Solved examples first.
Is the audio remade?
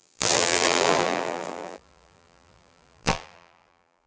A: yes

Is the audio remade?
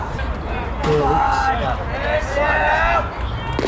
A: no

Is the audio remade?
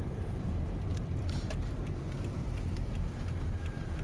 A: yes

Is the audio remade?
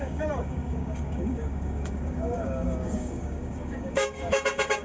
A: yes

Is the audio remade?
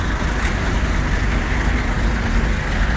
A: no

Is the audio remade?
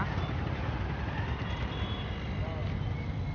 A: no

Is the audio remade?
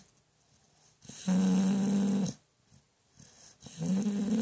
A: no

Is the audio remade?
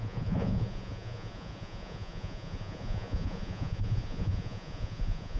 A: yes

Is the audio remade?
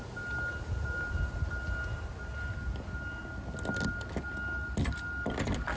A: no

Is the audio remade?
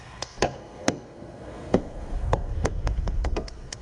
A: yes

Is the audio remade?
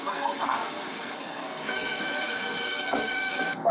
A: yes